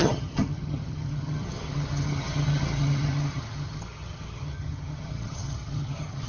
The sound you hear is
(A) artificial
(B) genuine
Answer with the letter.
A